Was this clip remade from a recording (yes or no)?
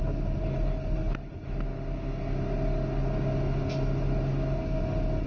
no